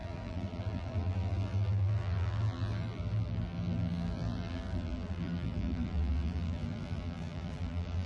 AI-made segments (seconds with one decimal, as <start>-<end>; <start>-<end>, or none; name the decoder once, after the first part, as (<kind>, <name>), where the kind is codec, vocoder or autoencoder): 0.0-8.1 (vocoder, BigVGAN v2)